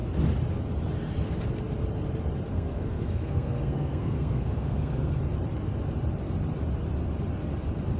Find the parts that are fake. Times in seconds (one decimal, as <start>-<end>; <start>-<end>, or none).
2.5-5.2